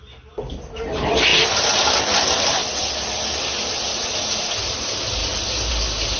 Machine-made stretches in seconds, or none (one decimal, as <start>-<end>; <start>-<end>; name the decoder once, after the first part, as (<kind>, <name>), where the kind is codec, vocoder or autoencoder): none